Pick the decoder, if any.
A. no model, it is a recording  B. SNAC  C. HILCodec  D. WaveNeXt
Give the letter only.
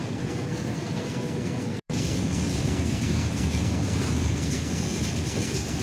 B